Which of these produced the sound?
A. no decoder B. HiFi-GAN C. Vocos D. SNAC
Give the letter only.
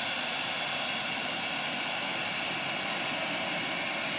A